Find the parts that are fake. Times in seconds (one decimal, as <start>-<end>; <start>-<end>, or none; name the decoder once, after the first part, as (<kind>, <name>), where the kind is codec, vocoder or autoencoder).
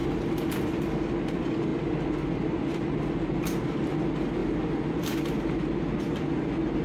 none